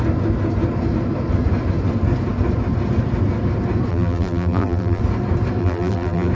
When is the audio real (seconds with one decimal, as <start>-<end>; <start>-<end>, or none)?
0.0-3.9; 5.0-5.6